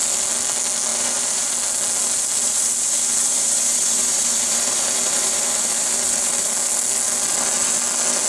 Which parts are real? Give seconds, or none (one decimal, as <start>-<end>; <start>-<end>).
0.0-0.9; 1.5-2.4; 6.5-8.3